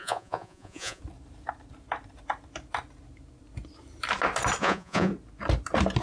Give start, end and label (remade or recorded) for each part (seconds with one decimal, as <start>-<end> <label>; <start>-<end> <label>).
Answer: 0.0-1.0 remade; 1.0-4.6 recorded; 4.6-5.1 remade; 5.1-6.0 recorded